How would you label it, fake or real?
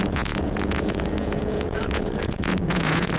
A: fake